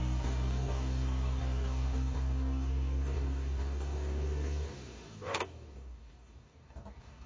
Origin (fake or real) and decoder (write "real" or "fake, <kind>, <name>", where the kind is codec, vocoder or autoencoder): fake, codec, DAC